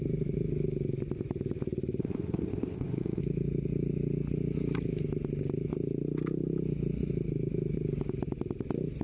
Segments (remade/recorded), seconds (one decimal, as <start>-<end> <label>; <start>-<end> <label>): 0.0-2.0 recorded; 2.0-3.2 remade; 3.2-9.0 recorded